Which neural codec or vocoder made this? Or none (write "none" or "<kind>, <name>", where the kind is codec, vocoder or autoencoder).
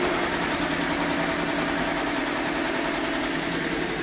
none